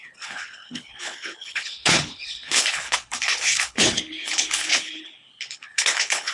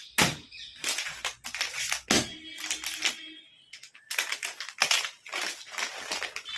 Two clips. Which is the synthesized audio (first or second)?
first